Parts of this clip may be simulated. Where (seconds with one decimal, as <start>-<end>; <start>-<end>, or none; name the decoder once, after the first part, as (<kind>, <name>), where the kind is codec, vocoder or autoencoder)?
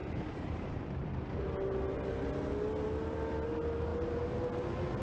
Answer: 0.0-0.8 (vocoder, BigVGAN v2)